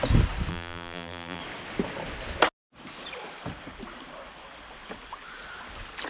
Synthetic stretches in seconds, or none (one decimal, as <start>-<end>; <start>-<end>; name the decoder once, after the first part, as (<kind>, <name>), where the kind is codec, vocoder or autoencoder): 0.5-1.4 (vocoder, BigVGAN v2)